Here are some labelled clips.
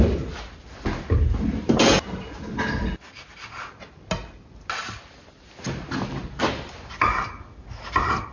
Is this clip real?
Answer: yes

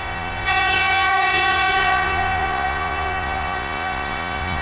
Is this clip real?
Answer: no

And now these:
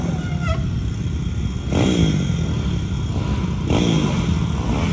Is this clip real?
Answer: yes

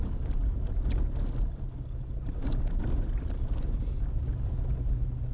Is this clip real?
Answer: yes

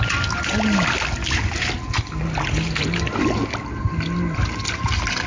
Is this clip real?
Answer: yes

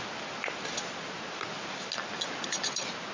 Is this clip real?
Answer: yes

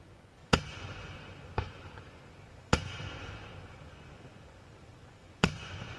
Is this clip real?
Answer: no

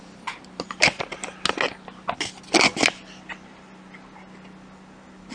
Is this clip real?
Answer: yes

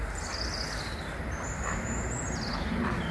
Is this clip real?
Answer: yes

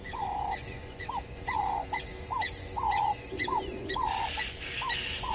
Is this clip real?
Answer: no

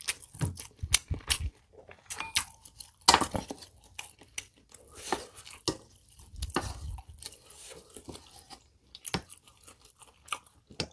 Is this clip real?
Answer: yes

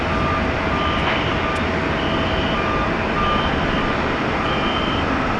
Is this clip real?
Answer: yes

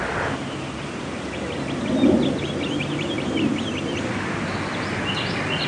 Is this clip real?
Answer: yes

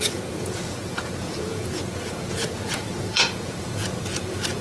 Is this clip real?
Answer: no